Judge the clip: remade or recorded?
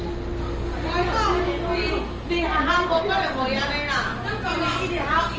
recorded